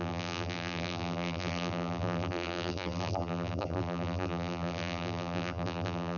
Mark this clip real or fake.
fake